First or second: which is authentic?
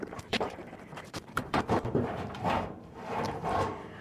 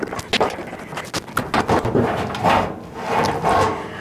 second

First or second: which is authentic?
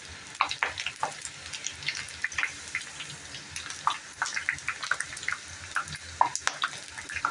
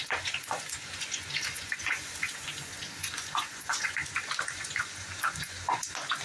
first